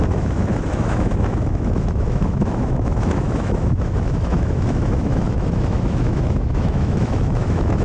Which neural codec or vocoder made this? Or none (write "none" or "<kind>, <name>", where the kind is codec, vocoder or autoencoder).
autoencoder, DAC-VAE